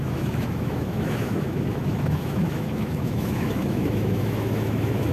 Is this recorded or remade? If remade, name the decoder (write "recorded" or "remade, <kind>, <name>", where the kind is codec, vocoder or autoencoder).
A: remade, autoencoder, DAC-VAE